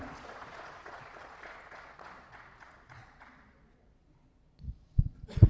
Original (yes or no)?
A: no